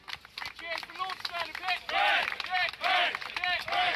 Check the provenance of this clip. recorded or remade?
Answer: recorded